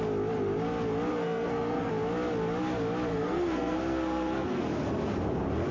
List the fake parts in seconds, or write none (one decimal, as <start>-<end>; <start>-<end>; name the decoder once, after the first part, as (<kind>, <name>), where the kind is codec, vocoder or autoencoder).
1.1-1.9 (codec, SNAC); 3.1-4.6

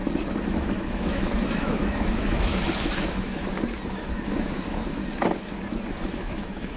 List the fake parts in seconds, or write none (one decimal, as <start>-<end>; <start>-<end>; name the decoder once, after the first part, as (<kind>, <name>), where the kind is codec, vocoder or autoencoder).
0.5-3.5 (autoencoder, DAC-VAE); 4.0-5.0; 6.0-6.8